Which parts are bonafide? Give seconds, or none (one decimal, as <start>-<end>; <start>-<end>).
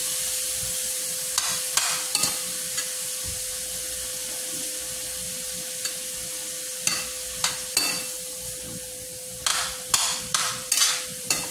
3.8-9.5